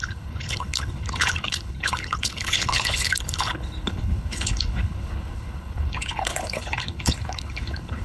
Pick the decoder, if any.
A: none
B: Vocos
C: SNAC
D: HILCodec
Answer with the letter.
D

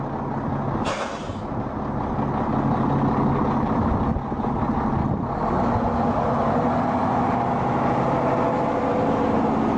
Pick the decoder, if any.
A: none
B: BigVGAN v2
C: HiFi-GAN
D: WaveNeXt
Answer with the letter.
A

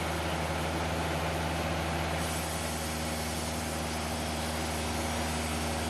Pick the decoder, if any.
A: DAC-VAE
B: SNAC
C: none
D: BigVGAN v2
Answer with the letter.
C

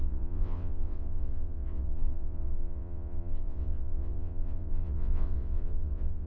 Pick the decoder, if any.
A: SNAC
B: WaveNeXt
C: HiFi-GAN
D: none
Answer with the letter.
B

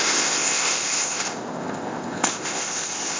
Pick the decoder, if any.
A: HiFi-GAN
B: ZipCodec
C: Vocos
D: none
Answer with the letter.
B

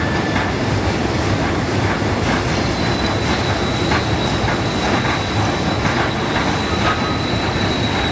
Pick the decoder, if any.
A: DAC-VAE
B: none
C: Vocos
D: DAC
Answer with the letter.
B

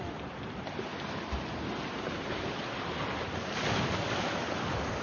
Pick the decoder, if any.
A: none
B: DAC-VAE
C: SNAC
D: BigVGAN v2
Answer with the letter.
A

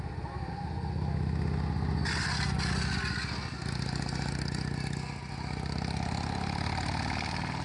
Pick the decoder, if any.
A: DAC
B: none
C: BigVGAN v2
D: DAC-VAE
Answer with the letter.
B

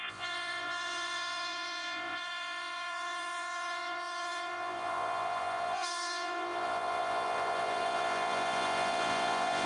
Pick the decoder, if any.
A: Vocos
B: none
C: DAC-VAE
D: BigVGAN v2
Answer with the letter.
A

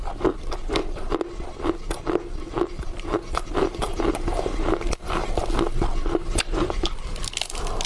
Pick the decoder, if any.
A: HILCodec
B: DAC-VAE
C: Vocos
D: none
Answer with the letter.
D